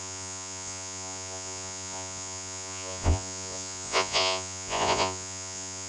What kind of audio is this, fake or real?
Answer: fake